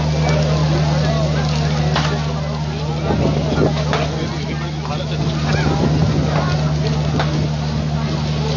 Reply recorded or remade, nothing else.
recorded